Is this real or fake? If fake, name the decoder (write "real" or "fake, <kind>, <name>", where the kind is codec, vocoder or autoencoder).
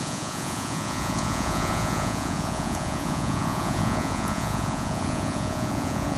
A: fake, vocoder, Vocos